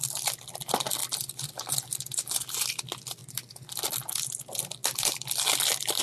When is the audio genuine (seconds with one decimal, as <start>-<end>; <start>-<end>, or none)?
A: 0.0-6.0